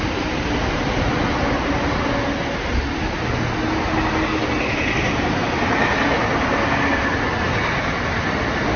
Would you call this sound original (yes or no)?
yes